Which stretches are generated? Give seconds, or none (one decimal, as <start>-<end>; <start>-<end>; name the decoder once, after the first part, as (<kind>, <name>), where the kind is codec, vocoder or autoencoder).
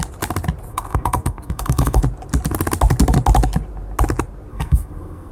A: 0.7-2.0 (codec, SNAC); 4.5-5.3